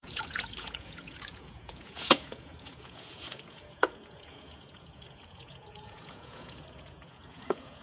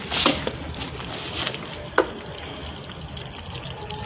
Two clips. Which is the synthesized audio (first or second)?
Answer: first